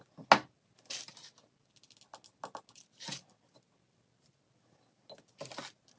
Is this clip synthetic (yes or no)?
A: no